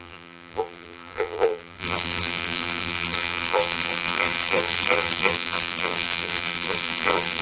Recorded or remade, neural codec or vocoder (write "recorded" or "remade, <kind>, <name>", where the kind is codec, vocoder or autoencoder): remade, vocoder, BigVGAN v2